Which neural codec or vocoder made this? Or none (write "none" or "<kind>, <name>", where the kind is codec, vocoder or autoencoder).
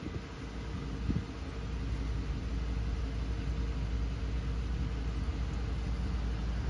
none